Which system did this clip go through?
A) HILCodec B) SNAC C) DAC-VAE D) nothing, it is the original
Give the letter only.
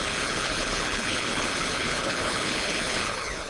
A